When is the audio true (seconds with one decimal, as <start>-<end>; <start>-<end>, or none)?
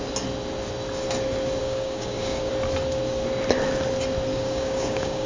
0.0-1.6; 2.5-4.3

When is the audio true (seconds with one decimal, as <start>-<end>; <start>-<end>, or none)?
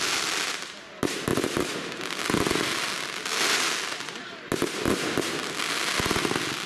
0.0-6.7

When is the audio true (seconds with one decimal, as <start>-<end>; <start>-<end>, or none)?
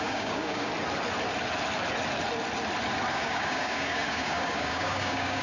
0.7-3.1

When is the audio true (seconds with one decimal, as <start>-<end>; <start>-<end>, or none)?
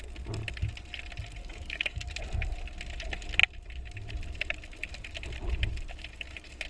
0.0-1.4; 2.1-6.7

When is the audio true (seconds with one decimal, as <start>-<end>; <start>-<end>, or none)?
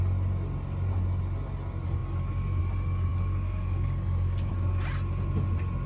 0.0-3.1; 4.5-5.9